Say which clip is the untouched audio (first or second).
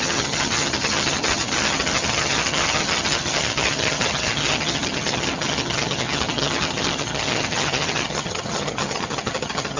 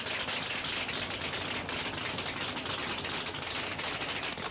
second